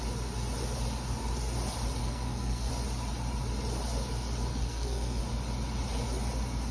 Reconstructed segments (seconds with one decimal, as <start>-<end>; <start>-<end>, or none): 2.0-2.7; 4.5-5.2